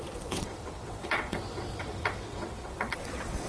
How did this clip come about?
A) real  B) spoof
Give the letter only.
B